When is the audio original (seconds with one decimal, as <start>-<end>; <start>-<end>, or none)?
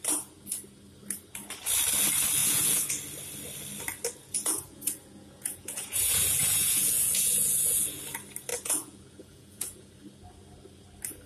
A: 0.0-2.4; 2.9-4.2; 8.0-8.5; 9.9-11.3